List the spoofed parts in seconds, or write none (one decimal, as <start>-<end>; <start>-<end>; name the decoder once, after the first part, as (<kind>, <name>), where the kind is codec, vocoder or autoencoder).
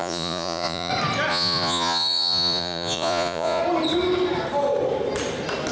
0.0-0.9 (vocoder, Vocos); 1.3-3.6